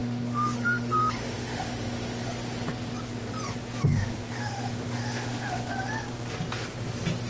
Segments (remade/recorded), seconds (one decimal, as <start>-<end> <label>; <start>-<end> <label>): 0.0-2.2 remade; 2.2-3.9 recorded; 3.9-5.7 remade; 5.7-7.3 recorded